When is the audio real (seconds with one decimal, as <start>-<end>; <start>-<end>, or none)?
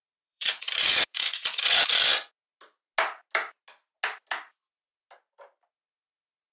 1.9-6.5